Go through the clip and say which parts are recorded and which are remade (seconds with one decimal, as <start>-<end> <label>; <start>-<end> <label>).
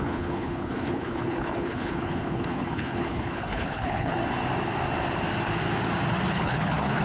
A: 0.0-4.2 remade; 4.2-6.3 recorded; 6.3-7.0 remade